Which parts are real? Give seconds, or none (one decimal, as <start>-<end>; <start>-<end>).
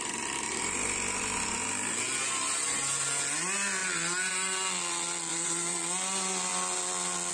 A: 0.0-5.3; 5.8-7.3